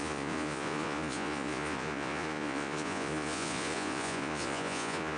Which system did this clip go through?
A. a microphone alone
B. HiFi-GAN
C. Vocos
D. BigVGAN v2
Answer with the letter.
C